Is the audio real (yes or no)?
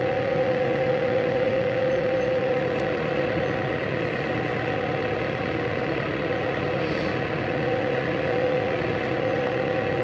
no